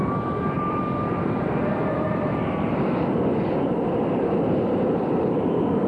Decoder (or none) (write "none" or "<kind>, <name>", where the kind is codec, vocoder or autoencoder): vocoder, BigVGAN v2